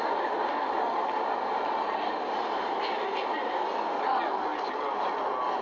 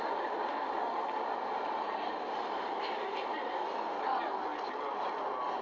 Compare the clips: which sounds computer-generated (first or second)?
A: second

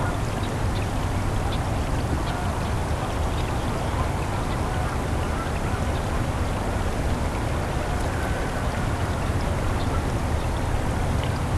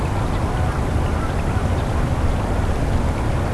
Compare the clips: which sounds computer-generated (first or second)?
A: second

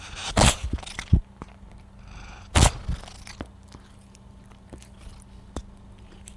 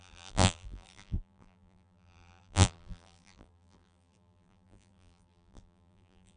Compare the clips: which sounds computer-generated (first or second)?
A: second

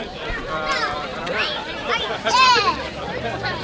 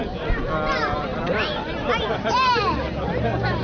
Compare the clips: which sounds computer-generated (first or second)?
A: first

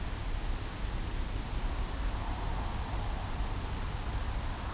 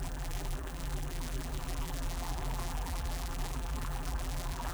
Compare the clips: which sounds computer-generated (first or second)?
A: second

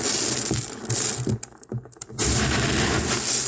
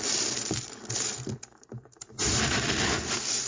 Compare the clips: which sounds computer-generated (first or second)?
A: second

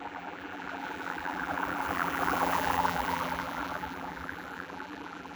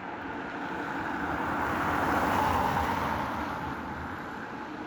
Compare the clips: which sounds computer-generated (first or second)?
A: first